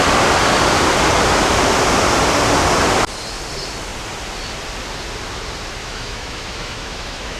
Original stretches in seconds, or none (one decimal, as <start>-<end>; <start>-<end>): 0.0-5.8